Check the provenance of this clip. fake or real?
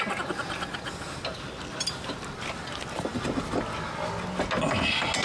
real